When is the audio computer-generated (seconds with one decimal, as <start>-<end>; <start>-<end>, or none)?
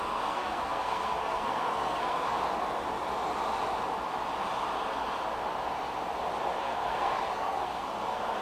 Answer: 0.0-2.4; 6.6-8.4